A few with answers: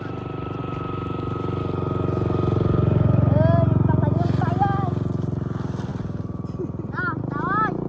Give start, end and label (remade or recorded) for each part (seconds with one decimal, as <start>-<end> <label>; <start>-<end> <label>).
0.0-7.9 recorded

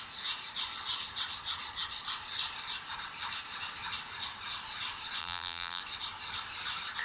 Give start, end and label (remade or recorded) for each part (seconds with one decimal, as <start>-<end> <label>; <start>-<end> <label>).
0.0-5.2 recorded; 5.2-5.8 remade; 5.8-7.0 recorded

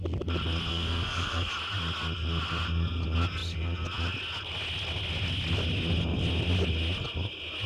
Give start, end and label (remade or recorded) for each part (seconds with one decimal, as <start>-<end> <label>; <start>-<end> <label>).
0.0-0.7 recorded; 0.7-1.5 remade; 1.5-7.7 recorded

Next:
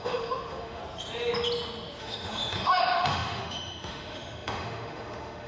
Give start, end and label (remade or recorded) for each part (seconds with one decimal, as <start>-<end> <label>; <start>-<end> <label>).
0.0-0.8 remade; 0.8-2.0 recorded; 2.0-5.5 remade

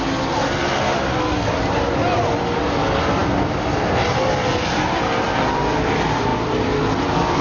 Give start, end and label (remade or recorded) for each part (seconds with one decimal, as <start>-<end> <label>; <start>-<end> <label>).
0.0-7.4 recorded

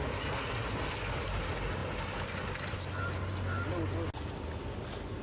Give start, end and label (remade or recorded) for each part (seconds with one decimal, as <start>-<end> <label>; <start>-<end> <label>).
0.0-5.2 recorded

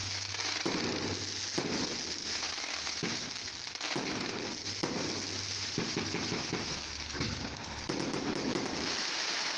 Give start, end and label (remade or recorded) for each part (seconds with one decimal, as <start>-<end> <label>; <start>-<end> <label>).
0.0-0.7 remade; 0.7-2.2 recorded; 2.2-4.5 remade; 4.5-5.6 recorded; 5.6-9.6 remade

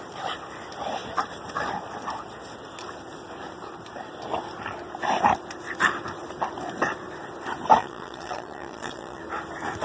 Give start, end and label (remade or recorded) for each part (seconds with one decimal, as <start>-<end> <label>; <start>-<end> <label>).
0.0-7.8 recorded; 7.8-9.2 remade; 9.2-9.8 recorded